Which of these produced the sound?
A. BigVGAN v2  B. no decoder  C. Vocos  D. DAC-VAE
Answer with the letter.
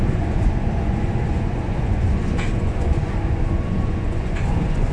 C